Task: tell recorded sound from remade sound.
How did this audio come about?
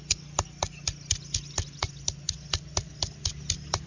recorded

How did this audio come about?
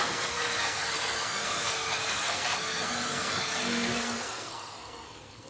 remade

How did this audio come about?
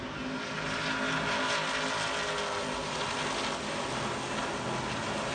recorded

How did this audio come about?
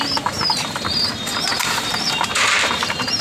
remade